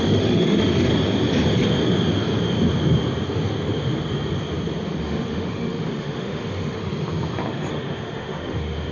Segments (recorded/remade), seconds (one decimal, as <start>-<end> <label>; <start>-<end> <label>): 0.0-0.9 remade; 0.9-5.0 recorded; 5.0-6.8 remade; 6.8-7.7 recorded; 7.7-8.9 remade